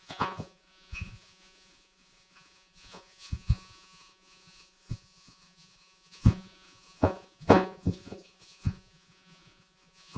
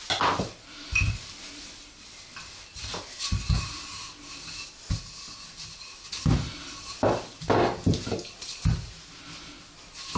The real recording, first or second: second